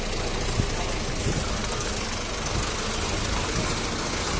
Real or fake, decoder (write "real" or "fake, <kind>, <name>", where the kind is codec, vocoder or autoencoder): real